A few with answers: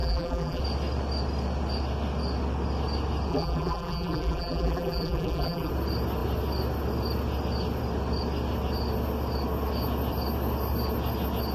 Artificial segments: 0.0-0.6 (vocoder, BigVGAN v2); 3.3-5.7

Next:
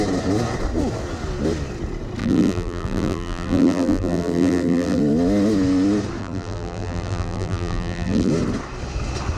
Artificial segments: 2.2-5.0 (vocoder, BigVGAN v2); 6.2-8.3

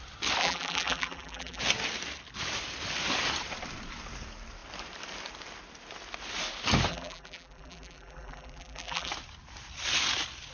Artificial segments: 0.4-1.6 (vocoder, BigVGAN v2); 6.9-9.1

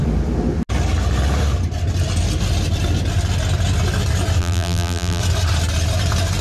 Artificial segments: 4.4-5.2 (vocoder, BigVGAN v2)

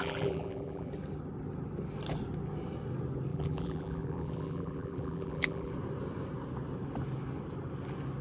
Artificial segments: 0.0-0.9 (vocoder, BigVGAN v2); 3.3-5.7

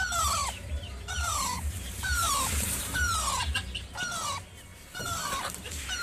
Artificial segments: 0.4-2.3 (vocoder, BigVGAN v2)

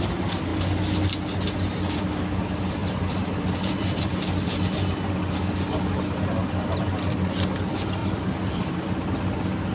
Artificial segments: 2.8-4.6 (vocoder, BigVGAN v2); 8.0-8.8

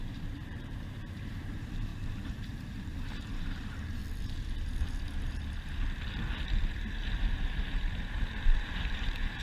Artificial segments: 0.0-4.0 (vocoder, BigVGAN v2); 8.1-9.4